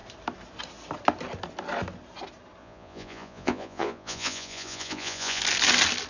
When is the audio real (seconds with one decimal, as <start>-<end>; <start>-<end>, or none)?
0.0-2.6; 5.4-6.1